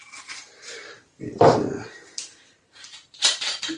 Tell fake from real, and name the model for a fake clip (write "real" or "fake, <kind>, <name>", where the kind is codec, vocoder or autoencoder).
fake, vocoder, BigVGAN v2